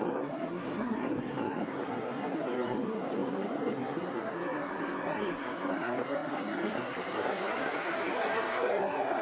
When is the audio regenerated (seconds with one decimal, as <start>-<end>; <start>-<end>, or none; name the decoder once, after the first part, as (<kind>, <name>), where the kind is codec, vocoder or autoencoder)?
0.0-9.2 (codec, SNAC)